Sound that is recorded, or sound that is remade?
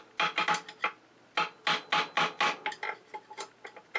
recorded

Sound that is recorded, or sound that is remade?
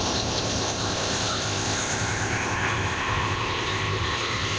remade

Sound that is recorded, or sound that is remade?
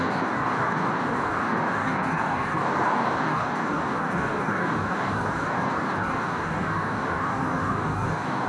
remade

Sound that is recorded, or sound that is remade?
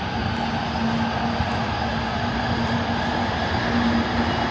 recorded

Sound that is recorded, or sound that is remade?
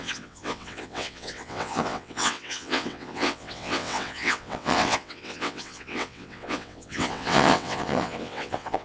remade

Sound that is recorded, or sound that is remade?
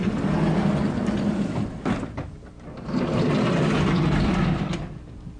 recorded